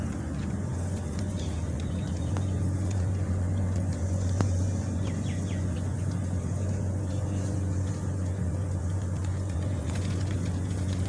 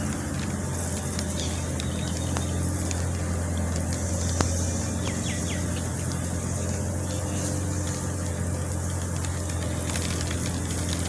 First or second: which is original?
second